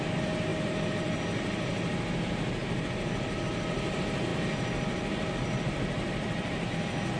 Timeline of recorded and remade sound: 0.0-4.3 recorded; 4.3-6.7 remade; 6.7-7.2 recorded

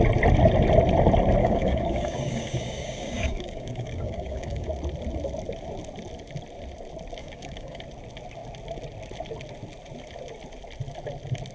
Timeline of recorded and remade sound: 0.0-1.4 recorded; 1.4-4.7 remade; 4.7-7.2 recorded; 7.2-7.8 remade; 7.8-11.5 recorded